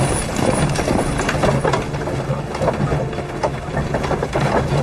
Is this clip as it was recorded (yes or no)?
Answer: yes